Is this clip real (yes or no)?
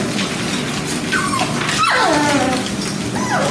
yes